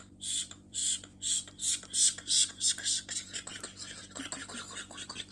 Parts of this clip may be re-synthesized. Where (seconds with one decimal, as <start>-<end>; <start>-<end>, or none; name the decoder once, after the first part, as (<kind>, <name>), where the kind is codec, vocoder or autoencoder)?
0.0-0.8 (vocoder, BigVGAN v2); 4.0-5.3